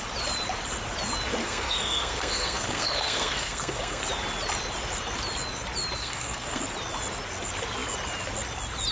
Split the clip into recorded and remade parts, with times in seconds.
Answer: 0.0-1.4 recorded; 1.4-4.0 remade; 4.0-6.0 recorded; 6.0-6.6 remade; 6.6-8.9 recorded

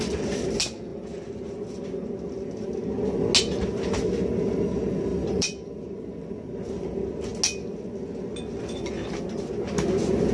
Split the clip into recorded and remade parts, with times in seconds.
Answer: 0.0-5.1 recorded; 5.1-6.3 remade; 6.3-10.3 recorded

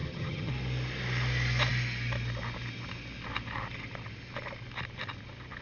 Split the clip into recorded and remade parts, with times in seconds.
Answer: 0.0-0.5 remade; 0.5-5.6 recorded

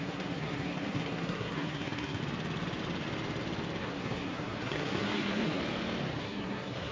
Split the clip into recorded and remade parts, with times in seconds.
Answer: 0.0-2.2 remade; 2.2-3.8 recorded; 3.8-5.6 remade; 5.6-6.2 recorded; 6.2-6.9 remade

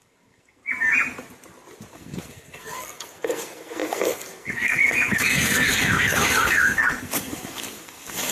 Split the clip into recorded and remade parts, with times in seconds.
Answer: 0.0-0.6 remade; 0.6-1.9 recorded; 1.9-8.3 remade

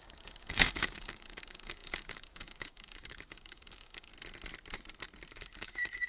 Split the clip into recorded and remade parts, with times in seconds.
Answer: 0.0-4.1 remade; 4.1-5.3 recorded; 5.3-6.1 remade

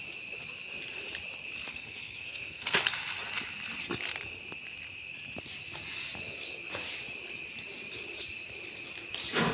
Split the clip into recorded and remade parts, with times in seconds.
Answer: 0.0-1.7 recorded; 1.7-2.8 remade; 2.8-9.5 recorded

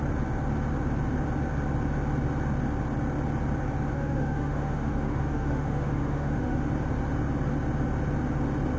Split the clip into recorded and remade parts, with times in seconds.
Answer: 0.0-3.9 recorded; 3.9-6.7 remade; 6.7-8.8 recorded